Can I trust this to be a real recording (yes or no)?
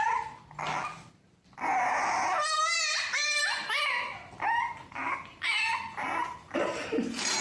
yes